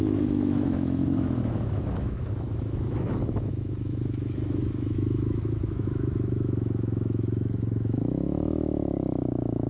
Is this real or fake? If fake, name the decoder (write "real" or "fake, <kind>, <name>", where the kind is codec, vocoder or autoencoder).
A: fake, autoencoder, DAC-VAE